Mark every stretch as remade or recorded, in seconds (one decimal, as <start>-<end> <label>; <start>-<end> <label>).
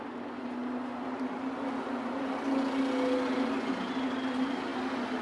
0.0-5.2 recorded